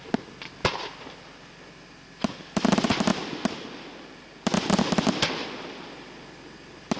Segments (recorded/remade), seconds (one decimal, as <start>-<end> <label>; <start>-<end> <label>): 0.0-7.0 recorded